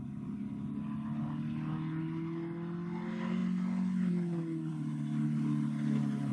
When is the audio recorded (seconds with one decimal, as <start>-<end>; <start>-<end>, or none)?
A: 0.0-6.3